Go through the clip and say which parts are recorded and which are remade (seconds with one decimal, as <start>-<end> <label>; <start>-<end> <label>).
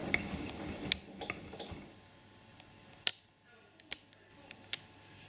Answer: 0.0-5.3 recorded